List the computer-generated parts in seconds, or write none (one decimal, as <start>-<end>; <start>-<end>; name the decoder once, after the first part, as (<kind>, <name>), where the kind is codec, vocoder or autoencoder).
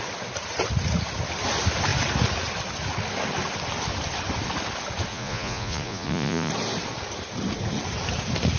5.1-6.5 (vocoder, Vocos)